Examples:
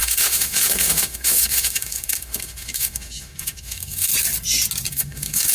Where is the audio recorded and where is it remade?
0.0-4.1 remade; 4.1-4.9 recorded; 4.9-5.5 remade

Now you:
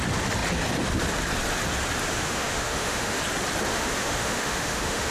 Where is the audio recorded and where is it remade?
0.0-2.1 recorded; 2.1-3.2 remade; 3.2-3.7 recorded; 3.7-5.1 remade

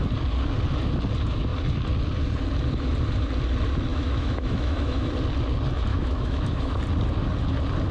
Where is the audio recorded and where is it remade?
0.0-3.9 recorded; 3.9-5.1 remade; 5.1-5.9 recorded; 5.9-6.8 remade; 6.8-7.9 recorded

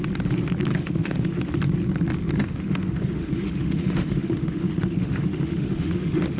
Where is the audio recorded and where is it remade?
0.0-0.7 recorded; 0.7-1.4 remade; 1.4-2.4 recorded; 2.4-6.4 remade

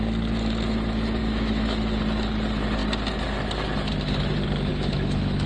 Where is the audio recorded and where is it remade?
0.0-1.2 recorded; 1.2-2.0 remade; 2.0-4.7 recorded; 4.7-5.5 remade

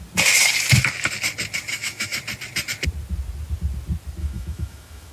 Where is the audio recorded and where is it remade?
0.0-1.7 recorded; 1.7-2.2 remade; 2.2-4.2 recorded; 4.2-5.1 remade

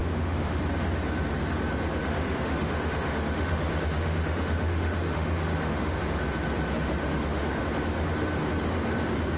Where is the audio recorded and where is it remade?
0.0-0.6 remade; 0.6-2.0 recorded; 2.0-6.0 remade; 6.0-7.0 recorded; 7.0-7.6 remade; 7.6-9.4 recorded

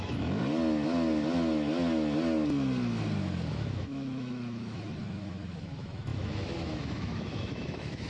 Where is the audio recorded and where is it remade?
0.0-0.4 remade; 0.4-3.5 recorded; 3.5-8.1 remade